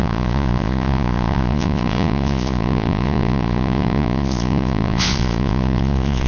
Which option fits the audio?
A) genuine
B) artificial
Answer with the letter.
B